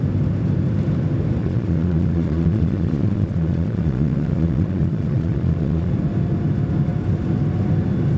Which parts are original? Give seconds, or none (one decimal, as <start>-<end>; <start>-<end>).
0.0-1.4; 5.9-8.2